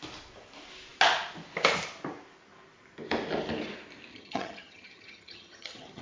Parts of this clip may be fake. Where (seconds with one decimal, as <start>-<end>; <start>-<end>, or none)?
4.1-6.0